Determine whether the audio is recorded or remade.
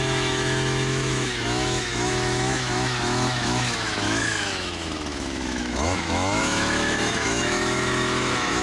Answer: remade